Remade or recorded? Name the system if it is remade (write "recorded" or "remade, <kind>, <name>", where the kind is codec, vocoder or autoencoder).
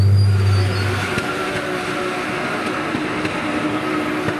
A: recorded